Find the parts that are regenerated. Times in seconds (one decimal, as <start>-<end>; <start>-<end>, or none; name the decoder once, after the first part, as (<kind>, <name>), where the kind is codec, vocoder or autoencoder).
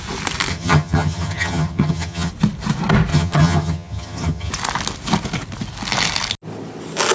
0.5-2.3 (vocoder, HiFi-GAN); 3.1-4.5